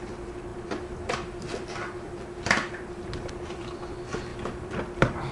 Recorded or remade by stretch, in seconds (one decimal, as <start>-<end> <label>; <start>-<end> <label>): 0.0-0.5 recorded; 0.5-3.7 remade; 3.7-4.3 recorded; 4.3-5.3 remade